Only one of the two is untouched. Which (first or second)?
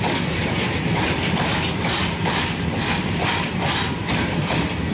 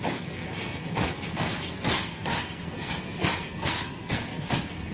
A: first